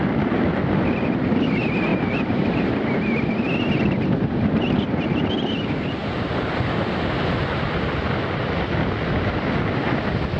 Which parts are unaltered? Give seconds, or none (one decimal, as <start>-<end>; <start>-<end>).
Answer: 0.0-1.9; 2.7-10.4